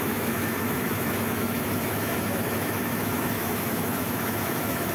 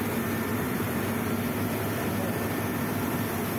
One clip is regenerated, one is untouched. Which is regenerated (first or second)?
first